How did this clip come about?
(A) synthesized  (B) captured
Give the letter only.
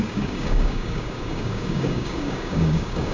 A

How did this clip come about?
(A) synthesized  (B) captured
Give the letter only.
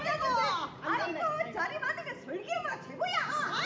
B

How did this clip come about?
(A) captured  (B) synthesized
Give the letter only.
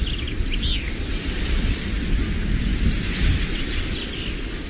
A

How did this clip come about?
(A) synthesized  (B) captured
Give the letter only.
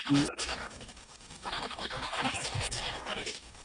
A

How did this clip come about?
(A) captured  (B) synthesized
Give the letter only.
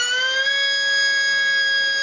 A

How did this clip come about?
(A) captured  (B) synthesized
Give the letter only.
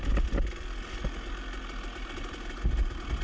A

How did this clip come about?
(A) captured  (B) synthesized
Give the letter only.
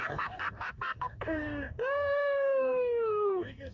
B